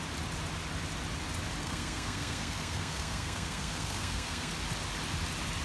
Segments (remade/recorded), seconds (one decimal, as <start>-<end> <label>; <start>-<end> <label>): 0.0-1.6 recorded; 1.6-4.5 remade; 4.5-5.6 recorded